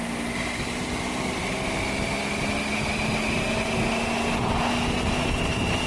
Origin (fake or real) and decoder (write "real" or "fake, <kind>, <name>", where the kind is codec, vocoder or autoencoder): real